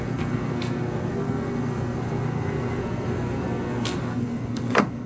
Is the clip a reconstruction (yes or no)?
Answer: yes